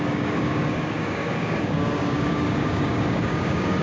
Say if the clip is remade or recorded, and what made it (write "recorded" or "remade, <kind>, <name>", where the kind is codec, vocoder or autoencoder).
remade, codec, DAC